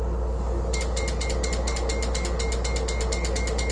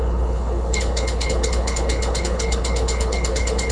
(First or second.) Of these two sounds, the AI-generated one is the second